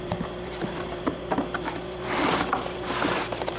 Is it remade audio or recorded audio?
remade